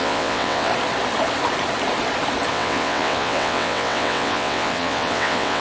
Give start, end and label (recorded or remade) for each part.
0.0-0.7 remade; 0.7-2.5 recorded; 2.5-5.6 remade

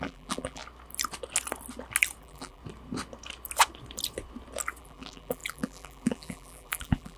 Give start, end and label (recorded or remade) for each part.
0.0-0.6 remade; 0.6-2.2 recorded; 2.2-2.6 remade; 2.6-4.8 recorded; 4.8-7.2 remade

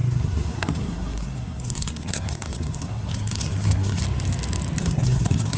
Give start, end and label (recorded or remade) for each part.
0.0-4.0 remade; 4.0-4.8 recorded; 4.8-5.6 remade

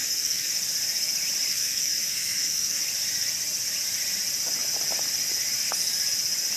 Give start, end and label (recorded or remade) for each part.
0.0-0.5 remade; 0.5-1.5 recorded; 1.5-2.8 remade; 2.8-6.6 recorded

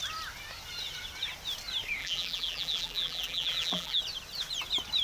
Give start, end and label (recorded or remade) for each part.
0.0-2.0 recorded; 2.0-4.0 remade; 4.0-5.0 recorded